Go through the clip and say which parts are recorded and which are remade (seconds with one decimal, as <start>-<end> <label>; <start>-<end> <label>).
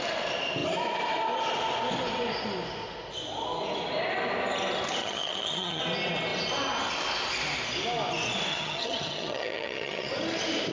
0.0-5.0 recorded; 5.0-5.8 remade; 5.8-8.5 recorded; 8.5-10.1 remade; 10.1-10.7 recorded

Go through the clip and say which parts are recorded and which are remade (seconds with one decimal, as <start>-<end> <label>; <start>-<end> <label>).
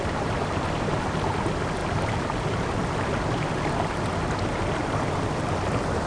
0.0-6.1 recorded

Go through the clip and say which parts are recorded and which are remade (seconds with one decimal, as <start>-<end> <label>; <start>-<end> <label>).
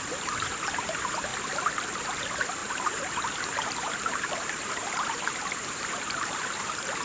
0.0-1.3 remade; 1.3-2.0 recorded; 2.0-7.0 remade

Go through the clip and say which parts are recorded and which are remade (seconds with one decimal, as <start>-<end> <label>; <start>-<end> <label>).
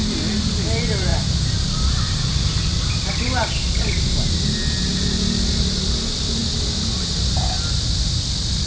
0.0-8.7 recorded